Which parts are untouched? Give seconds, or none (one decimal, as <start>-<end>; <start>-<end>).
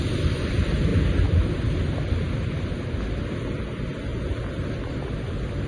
0.0-5.7